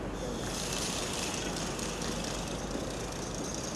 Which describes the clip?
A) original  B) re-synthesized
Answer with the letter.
A